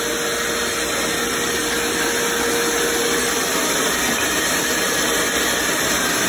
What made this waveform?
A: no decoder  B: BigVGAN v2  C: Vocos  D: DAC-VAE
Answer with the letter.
A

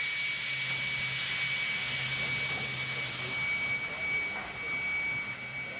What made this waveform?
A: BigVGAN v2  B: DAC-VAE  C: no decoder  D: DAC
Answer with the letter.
C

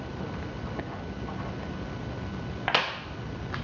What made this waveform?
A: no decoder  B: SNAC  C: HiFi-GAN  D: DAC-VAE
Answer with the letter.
A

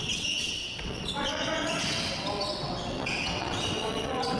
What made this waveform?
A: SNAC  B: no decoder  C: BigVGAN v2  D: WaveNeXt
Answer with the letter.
D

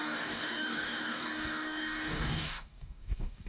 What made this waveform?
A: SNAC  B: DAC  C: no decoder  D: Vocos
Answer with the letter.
B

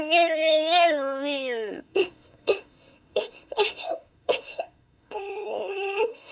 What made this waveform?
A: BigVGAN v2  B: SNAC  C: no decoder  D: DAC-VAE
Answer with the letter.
B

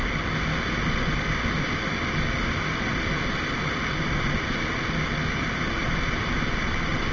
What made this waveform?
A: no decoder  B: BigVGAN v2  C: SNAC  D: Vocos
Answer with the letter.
A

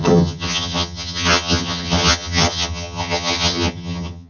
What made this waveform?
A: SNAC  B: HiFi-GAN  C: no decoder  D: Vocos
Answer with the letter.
B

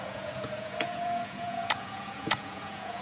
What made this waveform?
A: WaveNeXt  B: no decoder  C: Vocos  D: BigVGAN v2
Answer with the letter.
C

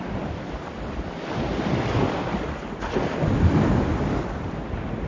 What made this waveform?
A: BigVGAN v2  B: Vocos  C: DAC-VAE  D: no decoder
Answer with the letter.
A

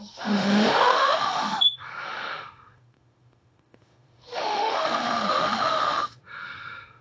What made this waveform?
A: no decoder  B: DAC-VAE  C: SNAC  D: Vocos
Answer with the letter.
B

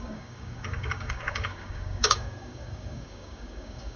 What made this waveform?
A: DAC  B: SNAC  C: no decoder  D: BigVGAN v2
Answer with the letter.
A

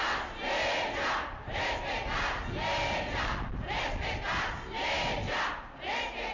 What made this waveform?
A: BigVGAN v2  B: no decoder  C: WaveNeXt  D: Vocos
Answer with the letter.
B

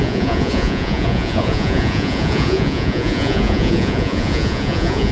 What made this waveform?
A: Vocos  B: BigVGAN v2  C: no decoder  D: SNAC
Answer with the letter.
A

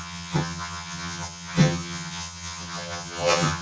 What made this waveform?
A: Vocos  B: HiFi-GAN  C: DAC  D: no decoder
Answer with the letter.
B